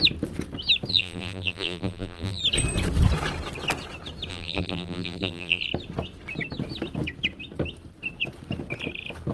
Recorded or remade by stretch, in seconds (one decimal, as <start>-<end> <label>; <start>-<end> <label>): 0.0-0.9 recorded; 0.9-2.4 remade; 2.4-4.3 recorded; 4.3-5.6 remade; 5.6-9.3 recorded